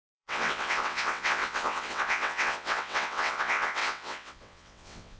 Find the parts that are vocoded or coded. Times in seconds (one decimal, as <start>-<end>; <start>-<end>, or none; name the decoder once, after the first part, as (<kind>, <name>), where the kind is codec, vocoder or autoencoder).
0.0-5.2 (vocoder, WaveNeXt)